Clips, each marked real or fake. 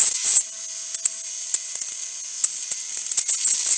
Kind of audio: real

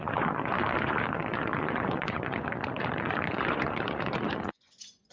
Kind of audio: fake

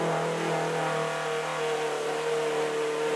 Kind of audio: real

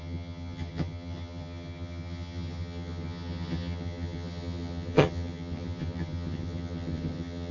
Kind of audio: fake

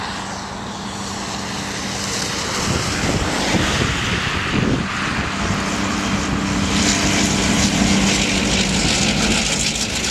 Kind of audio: real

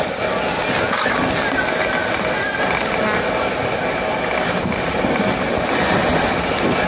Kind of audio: real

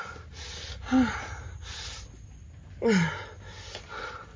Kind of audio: real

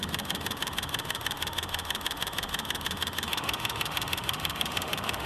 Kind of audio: fake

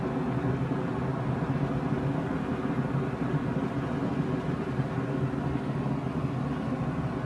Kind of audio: real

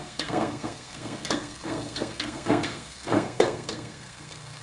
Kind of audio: fake